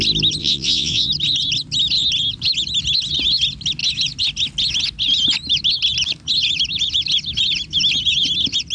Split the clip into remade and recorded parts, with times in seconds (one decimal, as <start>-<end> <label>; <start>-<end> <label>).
0.0-0.4 recorded; 0.4-1.1 remade; 1.1-8.7 recorded